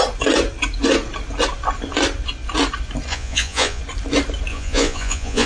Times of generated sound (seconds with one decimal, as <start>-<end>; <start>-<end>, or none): 3.1-3.8; 4.5-5.5